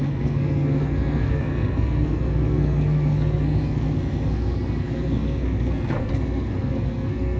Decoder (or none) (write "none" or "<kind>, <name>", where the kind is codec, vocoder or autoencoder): codec, SNAC